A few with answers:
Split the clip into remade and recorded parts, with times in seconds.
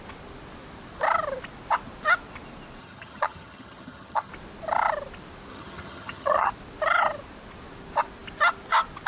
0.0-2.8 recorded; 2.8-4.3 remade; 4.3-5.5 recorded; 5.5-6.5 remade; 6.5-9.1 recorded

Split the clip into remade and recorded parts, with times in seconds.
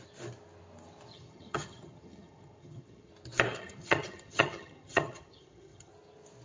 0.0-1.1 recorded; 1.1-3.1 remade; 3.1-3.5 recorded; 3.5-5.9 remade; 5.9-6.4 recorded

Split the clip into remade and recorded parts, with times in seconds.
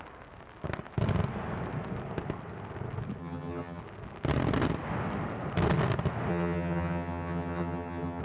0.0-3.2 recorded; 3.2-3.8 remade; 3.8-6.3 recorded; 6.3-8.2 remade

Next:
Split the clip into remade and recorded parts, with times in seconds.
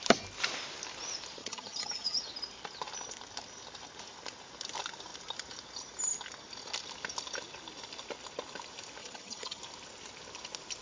0.0-1.4 recorded; 1.4-2.2 remade; 2.2-9.0 recorded; 9.0-9.6 remade; 9.6-10.8 recorded